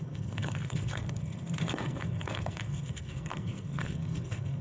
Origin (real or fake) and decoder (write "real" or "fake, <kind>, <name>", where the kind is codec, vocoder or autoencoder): fake, codec, SNAC